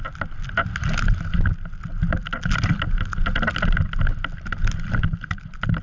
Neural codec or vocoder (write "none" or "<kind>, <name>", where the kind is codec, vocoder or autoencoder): none